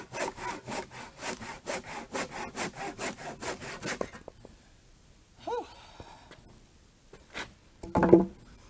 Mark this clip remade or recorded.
recorded